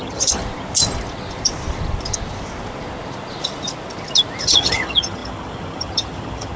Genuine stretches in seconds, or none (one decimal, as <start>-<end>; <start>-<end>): 0.4-4.4